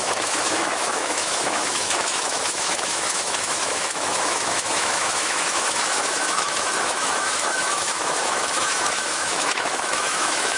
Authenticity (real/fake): fake